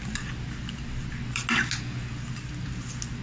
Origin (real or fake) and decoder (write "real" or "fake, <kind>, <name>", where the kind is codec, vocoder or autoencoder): real